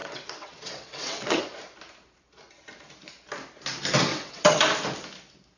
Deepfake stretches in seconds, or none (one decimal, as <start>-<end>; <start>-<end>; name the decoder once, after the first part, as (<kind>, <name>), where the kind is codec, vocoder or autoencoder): 0.0-1.4 (vocoder, WaveNeXt); 4.1-4.6